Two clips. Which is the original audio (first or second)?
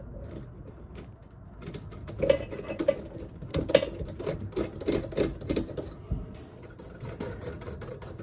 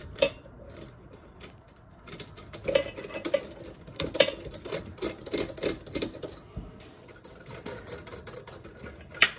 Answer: first